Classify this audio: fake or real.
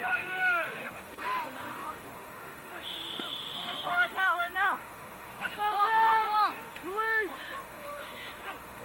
fake